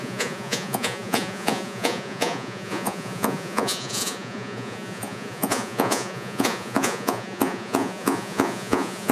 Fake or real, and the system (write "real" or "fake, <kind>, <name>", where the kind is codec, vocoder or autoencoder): fake, vocoder, Vocos